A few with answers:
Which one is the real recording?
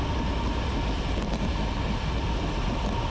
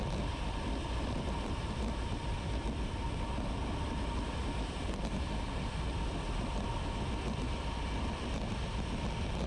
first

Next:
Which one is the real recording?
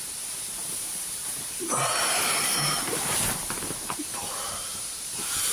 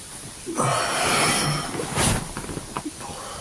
second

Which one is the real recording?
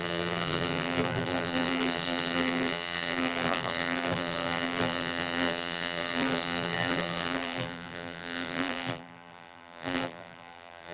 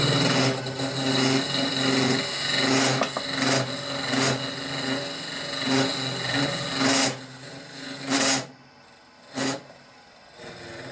second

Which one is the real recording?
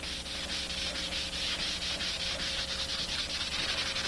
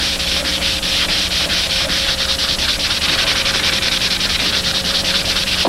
first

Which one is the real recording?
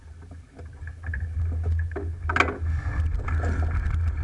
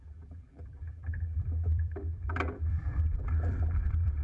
first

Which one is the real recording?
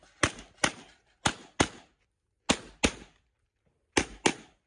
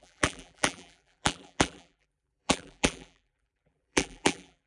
first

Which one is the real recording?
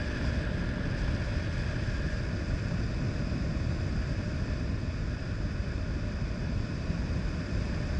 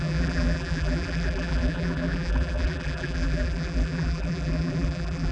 first